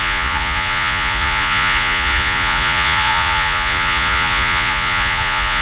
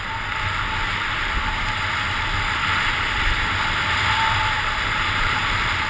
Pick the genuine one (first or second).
second